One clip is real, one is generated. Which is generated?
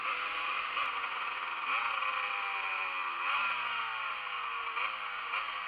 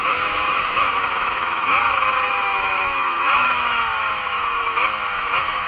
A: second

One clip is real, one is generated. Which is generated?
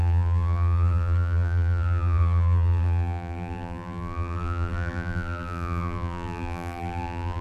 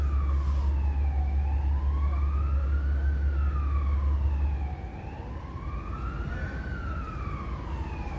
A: first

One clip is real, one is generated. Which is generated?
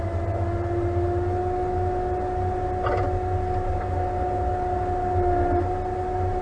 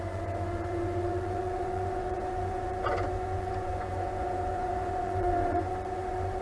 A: second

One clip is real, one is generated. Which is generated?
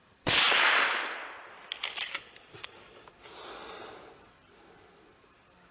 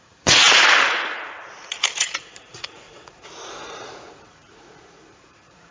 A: second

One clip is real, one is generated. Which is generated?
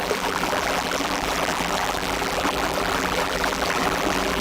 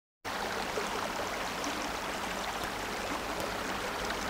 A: first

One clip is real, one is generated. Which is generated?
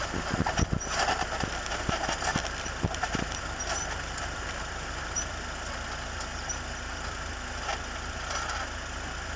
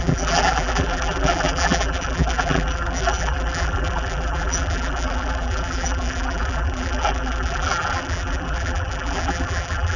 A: second